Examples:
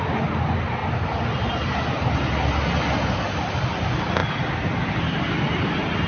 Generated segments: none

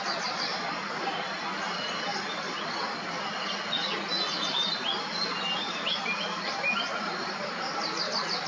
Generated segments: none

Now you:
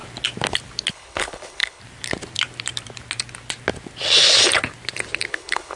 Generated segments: 0.9-1.8 (codec, HILCodec); 5.3-5.8